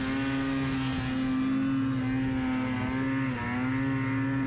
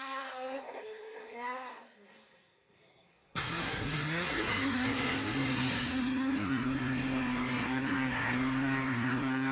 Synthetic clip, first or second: second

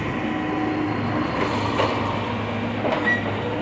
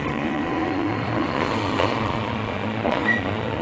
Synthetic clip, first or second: second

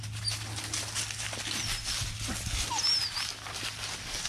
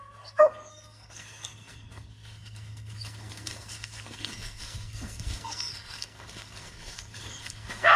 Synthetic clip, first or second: second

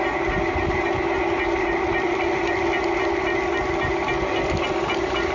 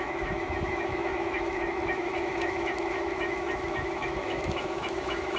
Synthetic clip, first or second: second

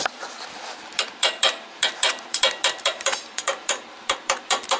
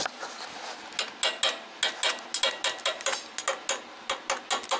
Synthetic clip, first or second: first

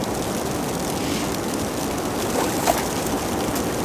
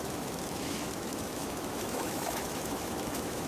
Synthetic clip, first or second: second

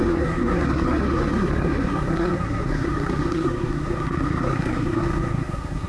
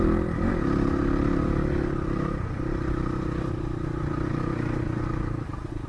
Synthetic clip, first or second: first